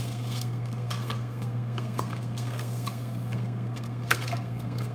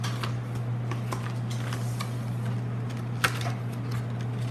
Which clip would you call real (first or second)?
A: second